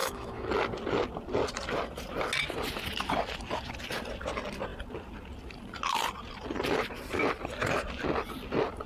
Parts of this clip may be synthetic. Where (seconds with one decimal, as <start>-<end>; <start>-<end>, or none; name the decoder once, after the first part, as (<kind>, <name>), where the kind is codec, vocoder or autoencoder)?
0.0-0.5 (autoencoder, DAC-VAE)